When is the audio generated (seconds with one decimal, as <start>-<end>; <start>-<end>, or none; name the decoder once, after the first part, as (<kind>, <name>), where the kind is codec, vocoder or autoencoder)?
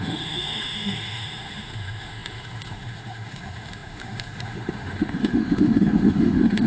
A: 0.0-6.7 (autoencoder, DAC-VAE)